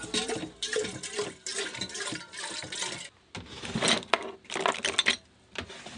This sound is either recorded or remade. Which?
recorded